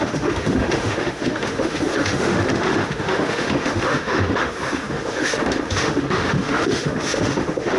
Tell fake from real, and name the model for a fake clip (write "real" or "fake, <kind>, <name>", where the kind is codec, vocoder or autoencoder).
fake, autoencoder, DAC-VAE